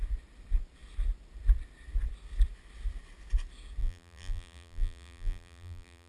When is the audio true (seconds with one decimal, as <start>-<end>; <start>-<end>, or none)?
0.0-3.8